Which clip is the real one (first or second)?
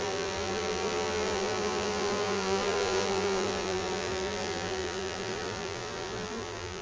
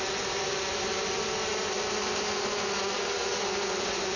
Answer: second